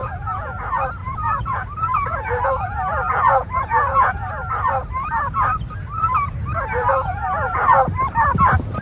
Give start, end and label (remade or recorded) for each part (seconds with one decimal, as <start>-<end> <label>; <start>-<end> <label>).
0.0-0.6 remade; 0.6-1.0 recorded; 1.0-4.3 remade; 4.3-6.9 recorded; 6.9-7.6 remade; 7.6-8.8 recorded

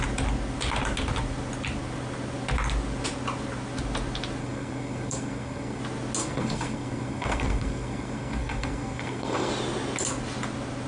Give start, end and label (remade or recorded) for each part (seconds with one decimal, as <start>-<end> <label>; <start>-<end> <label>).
0.0-4.4 recorded; 4.4-5.8 remade; 5.8-6.2 recorded; 6.2-9.5 remade; 9.5-10.9 recorded